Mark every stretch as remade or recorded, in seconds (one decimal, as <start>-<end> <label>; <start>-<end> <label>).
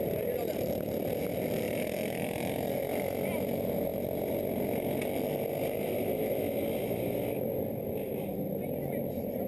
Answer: 0.0-9.5 recorded